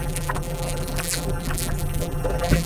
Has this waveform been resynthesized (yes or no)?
yes